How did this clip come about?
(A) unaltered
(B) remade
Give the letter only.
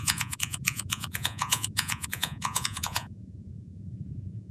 B